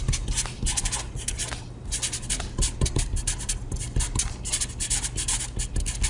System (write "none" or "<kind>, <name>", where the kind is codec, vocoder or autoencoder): none